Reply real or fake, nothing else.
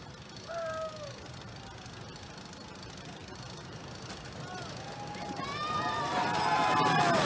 real